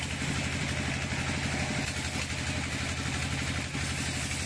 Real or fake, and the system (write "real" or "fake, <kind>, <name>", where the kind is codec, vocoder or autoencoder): real